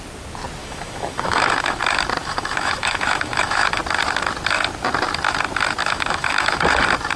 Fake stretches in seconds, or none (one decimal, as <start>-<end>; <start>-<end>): 0.6-1.8; 2.2-3.8; 5.8-6.6